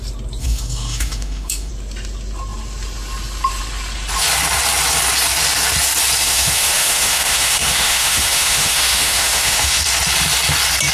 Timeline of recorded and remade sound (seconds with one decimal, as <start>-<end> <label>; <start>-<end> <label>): 0.0-0.4 recorded; 0.4-1.7 remade; 1.7-6.2 recorded; 6.2-9.8 remade; 9.8-10.9 recorded